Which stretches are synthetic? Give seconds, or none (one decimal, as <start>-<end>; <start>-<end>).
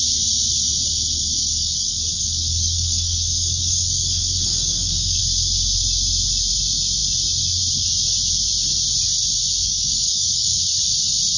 1.3-5.2; 9.6-10.6